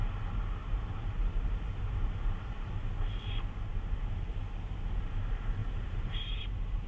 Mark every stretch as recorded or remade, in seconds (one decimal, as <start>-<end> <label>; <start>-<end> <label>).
0.0-0.6 recorded; 0.6-2.7 remade; 2.7-5.6 recorded; 5.6-6.4 remade; 6.4-6.9 recorded